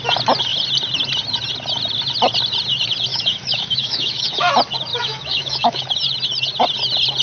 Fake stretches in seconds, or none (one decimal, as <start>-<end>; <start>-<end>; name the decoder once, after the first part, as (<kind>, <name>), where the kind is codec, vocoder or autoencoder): 3.1-4.5 (autoencoder, DAC-VAE); 4.9-5.9